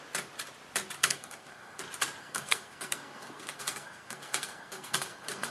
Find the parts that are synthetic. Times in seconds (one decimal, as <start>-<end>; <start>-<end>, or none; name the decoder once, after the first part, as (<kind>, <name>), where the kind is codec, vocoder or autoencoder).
1.0-1.8 (codec, SNAC); 2.2-5.5